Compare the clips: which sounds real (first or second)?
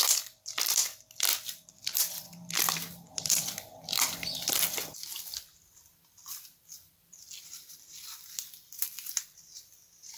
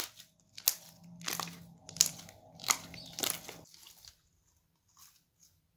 second